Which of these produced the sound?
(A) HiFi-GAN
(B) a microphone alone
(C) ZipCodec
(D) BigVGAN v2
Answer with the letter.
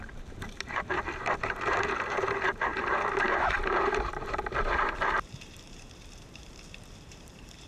D